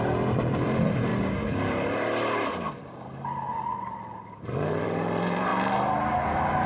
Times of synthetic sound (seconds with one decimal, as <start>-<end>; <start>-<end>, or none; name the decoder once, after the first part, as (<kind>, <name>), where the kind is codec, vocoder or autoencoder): 0.0-1.1 (vocoder, BigVGAN v2); 2.5-5.5; 6.2-6.7